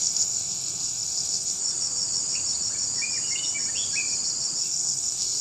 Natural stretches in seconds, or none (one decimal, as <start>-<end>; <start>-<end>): 1.6-4.6